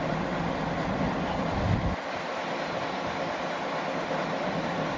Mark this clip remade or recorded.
recorded